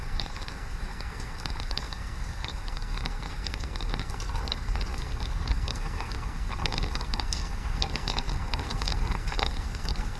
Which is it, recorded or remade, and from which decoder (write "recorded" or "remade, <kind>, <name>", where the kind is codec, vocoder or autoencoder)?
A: remade, codec, SNAC